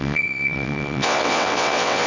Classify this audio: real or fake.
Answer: fake